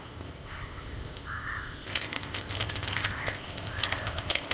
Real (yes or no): no